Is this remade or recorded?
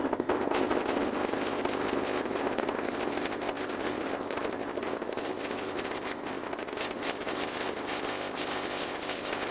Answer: remade